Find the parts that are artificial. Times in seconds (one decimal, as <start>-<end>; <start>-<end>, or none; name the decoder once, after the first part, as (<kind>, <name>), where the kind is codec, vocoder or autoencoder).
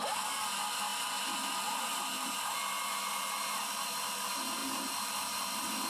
0.0-0.9 (vocoder, BigVGAN v2); 3.0-5.9